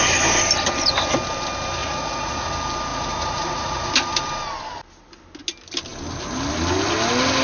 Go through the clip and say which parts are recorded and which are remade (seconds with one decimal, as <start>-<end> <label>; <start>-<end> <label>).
0.0-1.8 recorded; 1.8-2.5 remade; 2.5-2.9 recorded; 2.9-3.9 remade; 3.9-7.4 recorded